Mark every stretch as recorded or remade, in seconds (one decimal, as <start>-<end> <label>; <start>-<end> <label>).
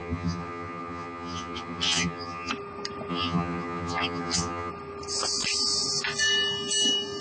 0.0-2.5 remade; 2.5-3.1 recorded; 3.1-4.7 remade; 4.7-7.2 recorded